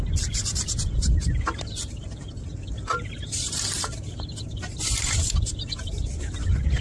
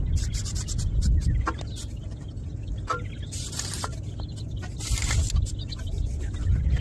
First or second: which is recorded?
second